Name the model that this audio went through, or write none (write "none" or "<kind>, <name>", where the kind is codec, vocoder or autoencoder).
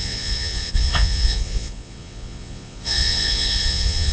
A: vocoder, Vocos